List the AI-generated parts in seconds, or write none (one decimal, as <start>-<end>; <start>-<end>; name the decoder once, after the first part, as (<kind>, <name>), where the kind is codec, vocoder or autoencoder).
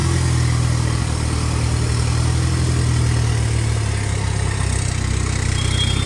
none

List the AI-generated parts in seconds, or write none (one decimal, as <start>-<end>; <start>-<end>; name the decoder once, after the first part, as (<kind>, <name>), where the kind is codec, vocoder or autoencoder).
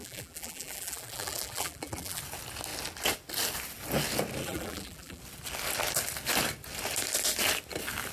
0.0-2.2 (vocoder, BigVGAN v2); 4.4-5.2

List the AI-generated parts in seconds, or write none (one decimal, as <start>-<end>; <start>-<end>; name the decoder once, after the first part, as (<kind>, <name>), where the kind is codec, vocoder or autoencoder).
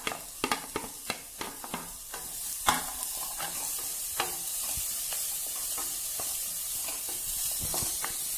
2.1-2.8 (vocoder, BigVGAN v2); 3.9-7.6